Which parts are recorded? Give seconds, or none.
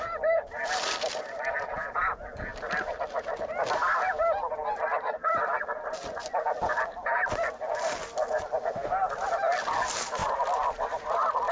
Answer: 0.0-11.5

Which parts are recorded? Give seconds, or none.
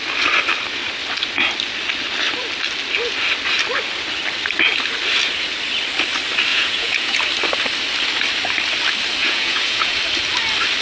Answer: 0.0-6.5; 7.2-9.2; 10.0-10.8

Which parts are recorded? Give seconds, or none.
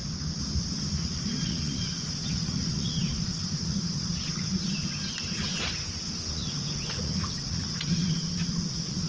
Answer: 0.0-1.0; 4.7-6.3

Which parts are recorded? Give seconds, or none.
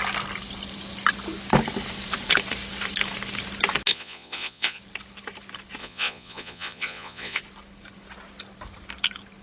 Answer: 0.0-3.9; 4.8-5.8; 7.4-9.4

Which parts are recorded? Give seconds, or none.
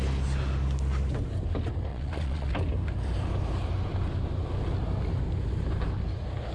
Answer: 0.0-1.9; 2.5-6.5